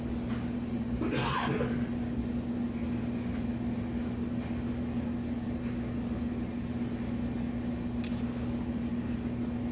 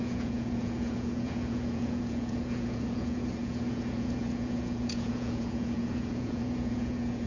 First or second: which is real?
first